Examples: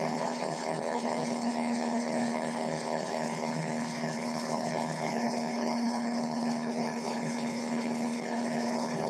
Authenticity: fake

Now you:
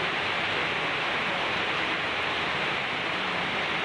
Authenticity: real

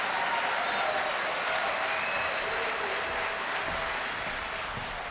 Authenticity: real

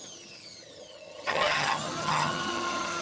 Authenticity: fake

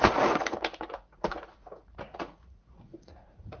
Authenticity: fake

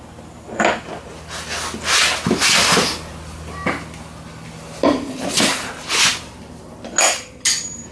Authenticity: real